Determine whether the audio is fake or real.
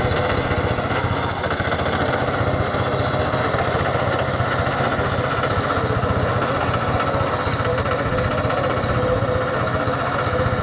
real